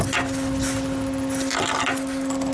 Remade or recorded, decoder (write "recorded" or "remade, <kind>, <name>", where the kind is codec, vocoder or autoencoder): recorded